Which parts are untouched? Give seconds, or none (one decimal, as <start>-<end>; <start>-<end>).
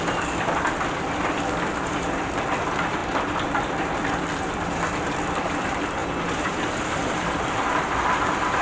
none